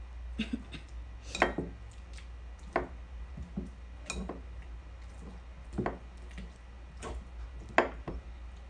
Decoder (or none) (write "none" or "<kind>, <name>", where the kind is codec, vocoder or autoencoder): none